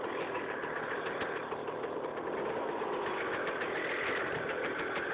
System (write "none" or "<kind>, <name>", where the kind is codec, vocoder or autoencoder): none